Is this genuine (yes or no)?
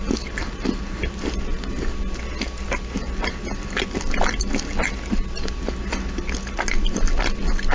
yes